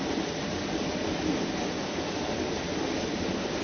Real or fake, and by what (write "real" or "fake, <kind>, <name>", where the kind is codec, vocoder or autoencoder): real